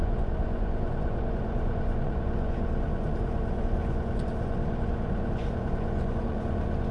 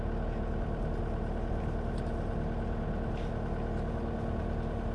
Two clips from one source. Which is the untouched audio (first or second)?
second